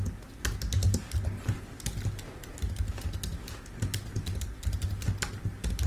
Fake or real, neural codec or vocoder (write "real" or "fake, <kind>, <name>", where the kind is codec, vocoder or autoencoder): real